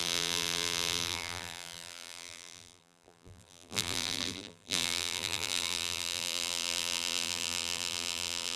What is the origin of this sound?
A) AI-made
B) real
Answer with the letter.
A